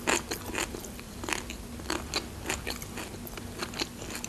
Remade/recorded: recorded